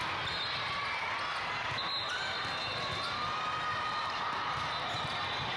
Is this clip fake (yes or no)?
no